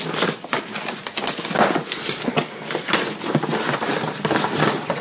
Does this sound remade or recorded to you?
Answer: recorded